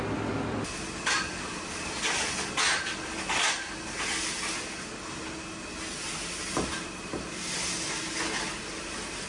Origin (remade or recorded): recorded